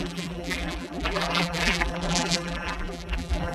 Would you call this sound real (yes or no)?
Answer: no